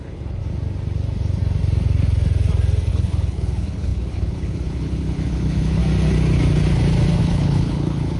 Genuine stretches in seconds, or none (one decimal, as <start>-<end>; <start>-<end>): 0.4-2.9; 5.8-7.2